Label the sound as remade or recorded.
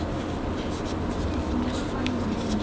recorded